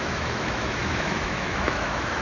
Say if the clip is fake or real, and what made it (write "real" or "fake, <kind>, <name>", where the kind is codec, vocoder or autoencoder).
fake, autoencoder, DAC-VAE